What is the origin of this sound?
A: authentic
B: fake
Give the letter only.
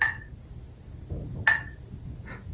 A